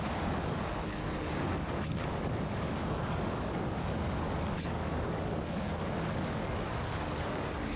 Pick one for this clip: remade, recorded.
remade